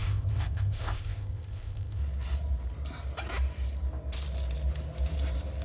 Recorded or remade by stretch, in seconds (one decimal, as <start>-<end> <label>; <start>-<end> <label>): 0.0-2.0 remade; 2.0-5.6 recorded